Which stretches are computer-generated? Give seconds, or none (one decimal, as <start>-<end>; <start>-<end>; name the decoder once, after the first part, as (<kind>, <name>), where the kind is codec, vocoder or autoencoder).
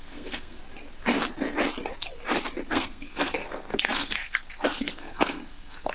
0.0-0.6 (codec, SNAC); 2.7-5.9